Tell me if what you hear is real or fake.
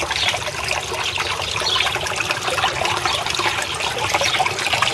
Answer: real